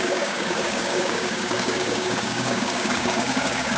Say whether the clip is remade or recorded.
remade